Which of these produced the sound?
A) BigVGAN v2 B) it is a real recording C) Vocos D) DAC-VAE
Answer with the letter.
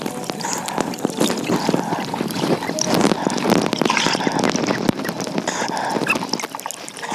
B